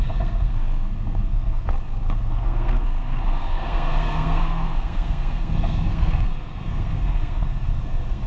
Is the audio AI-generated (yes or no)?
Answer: yes